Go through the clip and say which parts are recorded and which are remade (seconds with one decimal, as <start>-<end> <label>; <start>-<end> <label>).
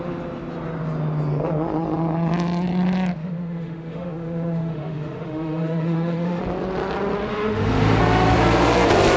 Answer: 0.0-3.2 recorded; 3.2-6.4 remade; 6.4-7.3 recorded; 7.3-8.0 remade; 8.0-9.2 recorded